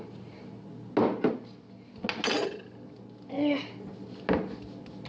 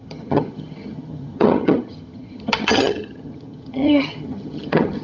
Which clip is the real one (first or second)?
first